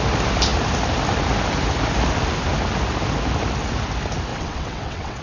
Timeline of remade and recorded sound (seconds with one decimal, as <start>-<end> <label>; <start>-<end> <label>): 0.0-4.3 recorded; 4.3-5.2 remade